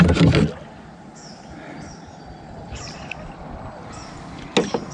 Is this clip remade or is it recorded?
recorded